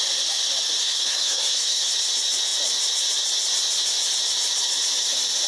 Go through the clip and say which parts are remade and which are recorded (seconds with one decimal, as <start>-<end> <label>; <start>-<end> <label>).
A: 0.0-0.8 recorded; 0.8-1.9 remade; 1.9-5.5 recorded